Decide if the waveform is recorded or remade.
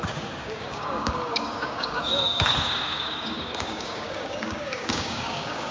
remade